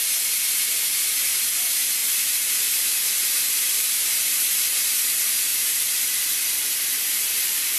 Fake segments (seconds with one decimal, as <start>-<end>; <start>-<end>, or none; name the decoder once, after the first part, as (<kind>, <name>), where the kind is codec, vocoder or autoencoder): 1.1-1.6 (vocoder, BigVGAN v2); 2.0-5.0; 5.5-6.1